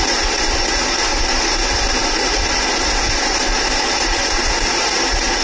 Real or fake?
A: real